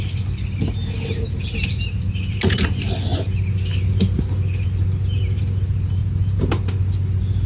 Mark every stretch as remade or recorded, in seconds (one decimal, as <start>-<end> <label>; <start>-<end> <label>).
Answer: 0.0-6.0 recorded; 6.0-6.5 remade; 6.5-7.5 recorded